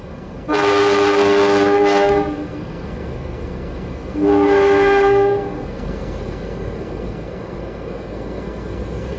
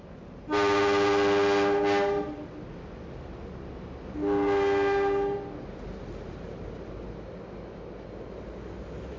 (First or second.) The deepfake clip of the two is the first